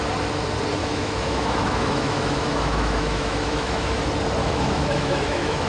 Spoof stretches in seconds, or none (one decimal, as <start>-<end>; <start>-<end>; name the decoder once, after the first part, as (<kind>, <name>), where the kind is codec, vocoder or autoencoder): 0.8-4.0 (autoencoder, DAC-VAE); 4.4-5.7